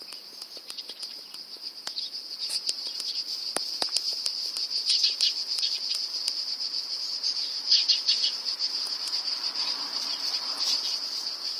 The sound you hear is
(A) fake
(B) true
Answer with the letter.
A